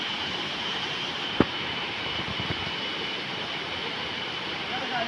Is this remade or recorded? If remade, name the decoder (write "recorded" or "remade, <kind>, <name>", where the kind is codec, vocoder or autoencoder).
remade, vocoder, BigVGAN v2